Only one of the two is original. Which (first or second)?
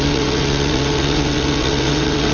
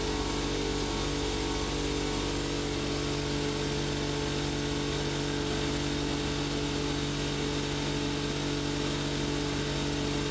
second